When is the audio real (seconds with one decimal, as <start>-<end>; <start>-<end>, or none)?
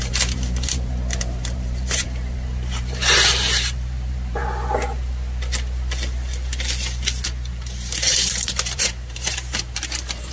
4.4-7.5